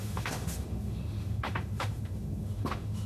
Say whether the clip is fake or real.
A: fake